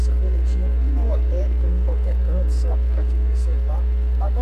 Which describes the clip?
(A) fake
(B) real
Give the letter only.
A